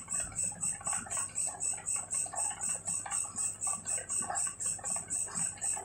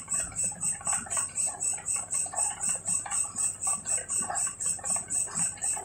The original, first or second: first